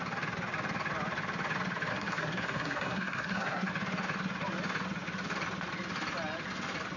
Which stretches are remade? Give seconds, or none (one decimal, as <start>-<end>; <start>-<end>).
1.9-3.7